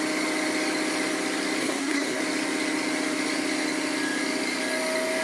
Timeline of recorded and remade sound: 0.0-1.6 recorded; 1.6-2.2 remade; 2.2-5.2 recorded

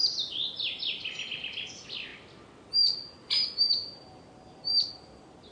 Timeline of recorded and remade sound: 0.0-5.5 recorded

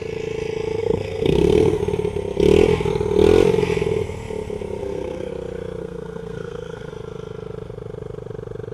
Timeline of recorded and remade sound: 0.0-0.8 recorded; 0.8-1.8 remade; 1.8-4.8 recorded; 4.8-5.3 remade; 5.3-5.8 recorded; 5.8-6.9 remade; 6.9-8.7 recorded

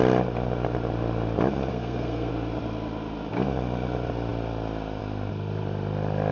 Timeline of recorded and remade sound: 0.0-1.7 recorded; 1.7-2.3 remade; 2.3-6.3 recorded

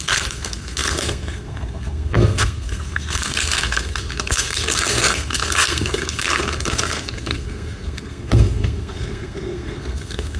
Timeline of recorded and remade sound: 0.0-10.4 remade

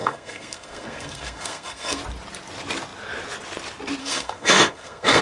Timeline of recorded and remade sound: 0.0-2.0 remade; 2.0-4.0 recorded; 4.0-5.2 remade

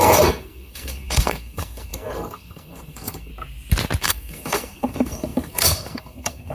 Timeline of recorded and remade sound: 0.0-3.3 remade; 3.3-4.0 recorded; 4.0-6.5 remade

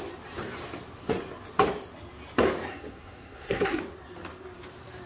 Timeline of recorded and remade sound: 0.0-2.7 recorded; 2.7-3.8 remade; 3.8-5.1 recorded